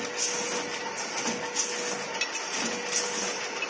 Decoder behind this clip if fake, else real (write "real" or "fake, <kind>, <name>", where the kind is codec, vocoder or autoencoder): real